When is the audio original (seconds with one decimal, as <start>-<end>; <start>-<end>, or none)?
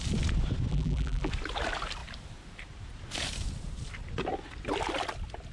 0.0-0.7; 1.3-5.5